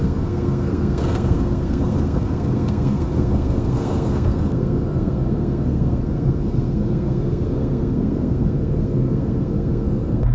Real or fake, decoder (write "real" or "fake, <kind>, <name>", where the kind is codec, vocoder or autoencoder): fake, codec, SNAC